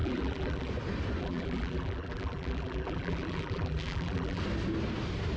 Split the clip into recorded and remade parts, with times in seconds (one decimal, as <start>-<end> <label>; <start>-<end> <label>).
0.0-0.7 remade; 0.7-1.2 recorded; 1.2-4.4 remade; 4.4-5.4 recorded